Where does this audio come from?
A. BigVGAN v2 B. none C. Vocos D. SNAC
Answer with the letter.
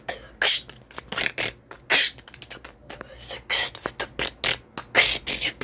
B